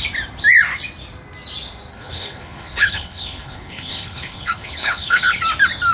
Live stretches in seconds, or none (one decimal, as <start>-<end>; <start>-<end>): 0.0-1.9; 5.4-5.9